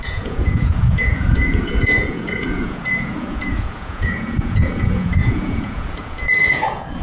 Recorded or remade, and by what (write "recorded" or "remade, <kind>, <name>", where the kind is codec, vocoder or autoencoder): remade, vocoder, Vocos